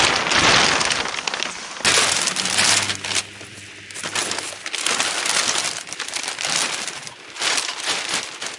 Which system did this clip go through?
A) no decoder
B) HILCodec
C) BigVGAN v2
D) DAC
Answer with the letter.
A